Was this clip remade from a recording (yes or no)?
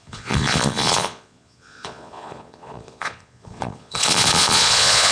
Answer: yes